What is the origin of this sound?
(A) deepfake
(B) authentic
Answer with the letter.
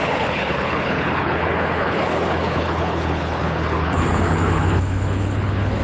A